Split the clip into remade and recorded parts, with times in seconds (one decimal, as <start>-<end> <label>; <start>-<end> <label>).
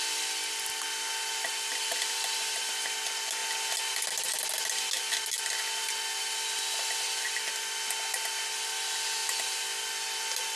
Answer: 0.0-10.6 recorded